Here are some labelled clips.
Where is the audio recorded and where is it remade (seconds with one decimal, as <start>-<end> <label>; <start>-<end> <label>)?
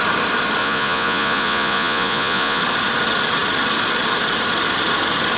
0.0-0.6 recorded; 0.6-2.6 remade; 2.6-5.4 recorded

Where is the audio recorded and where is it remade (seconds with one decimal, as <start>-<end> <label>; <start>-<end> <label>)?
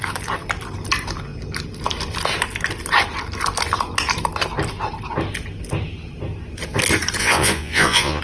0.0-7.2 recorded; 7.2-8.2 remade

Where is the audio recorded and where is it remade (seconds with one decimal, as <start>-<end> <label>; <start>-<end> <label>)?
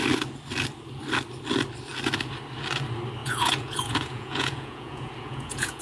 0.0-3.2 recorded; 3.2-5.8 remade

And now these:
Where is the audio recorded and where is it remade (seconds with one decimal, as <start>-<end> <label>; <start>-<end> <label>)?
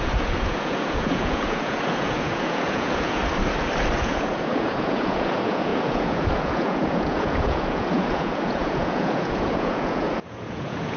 0.0-3.2 remade; 3.2-4.0 recorded; 4.0-11.0 remade